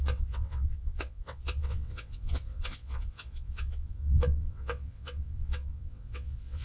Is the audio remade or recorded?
remade